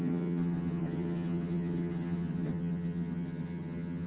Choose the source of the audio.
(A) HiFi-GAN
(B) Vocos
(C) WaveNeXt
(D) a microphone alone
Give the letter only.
A